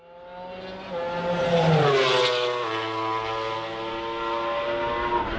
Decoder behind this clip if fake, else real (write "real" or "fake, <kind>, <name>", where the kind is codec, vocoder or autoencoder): real